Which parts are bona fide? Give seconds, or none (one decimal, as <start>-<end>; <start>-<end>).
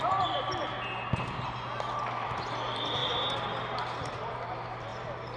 0.6-2.2; 3.0-4.5; 4.9-5.4